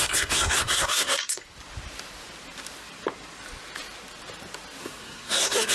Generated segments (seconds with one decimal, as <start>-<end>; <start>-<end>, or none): 0.0-1.4; 4.8-5.7